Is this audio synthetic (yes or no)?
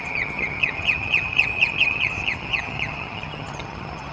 yes